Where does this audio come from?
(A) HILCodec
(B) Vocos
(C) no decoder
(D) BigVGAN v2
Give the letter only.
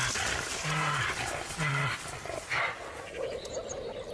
C